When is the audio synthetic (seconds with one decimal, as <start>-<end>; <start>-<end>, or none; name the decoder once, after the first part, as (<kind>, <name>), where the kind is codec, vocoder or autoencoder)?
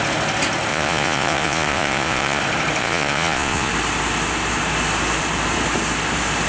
0.7-2.4 (vocoder, Vocos); 2.8-3.7